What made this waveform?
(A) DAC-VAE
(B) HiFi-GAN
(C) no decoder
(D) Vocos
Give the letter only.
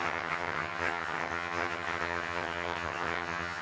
B